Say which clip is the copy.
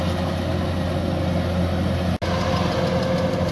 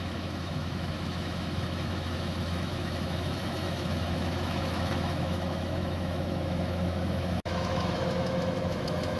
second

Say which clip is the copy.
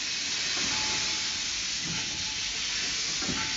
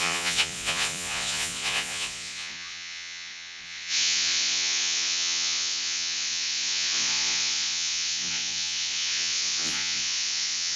second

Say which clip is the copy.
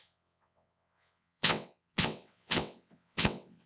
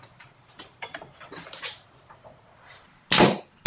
first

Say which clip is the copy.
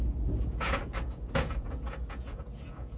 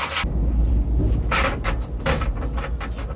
first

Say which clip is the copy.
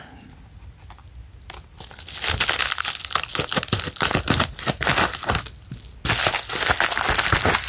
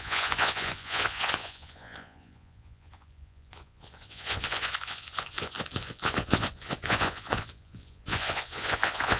second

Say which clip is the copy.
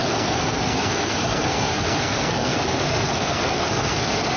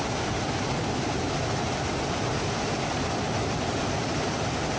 first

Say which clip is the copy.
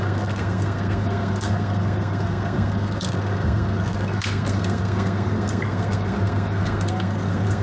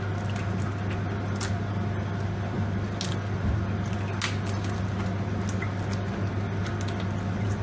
first